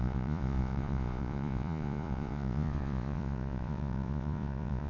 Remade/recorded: remade